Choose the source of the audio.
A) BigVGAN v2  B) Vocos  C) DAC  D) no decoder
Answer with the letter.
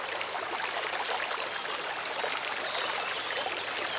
D